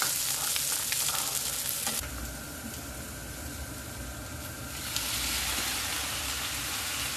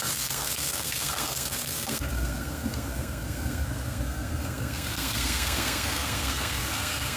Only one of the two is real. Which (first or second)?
first